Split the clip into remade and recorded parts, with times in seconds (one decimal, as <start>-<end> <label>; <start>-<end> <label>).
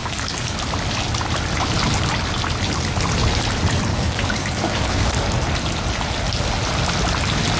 0.0-0.6 remade; 0.6-3.9 recorded; 3.9-5.1 remade; 5.1-7.6 recorded